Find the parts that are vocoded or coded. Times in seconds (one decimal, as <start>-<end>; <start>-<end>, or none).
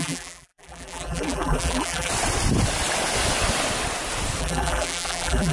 0.0-2.1; 4.4-5.5